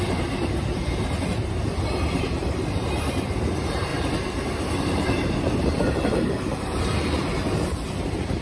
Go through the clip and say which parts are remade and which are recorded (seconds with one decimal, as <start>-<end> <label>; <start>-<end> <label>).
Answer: 0.0-3.9 remade; 3.9-4.7 recorded; 4.7-8.4 remade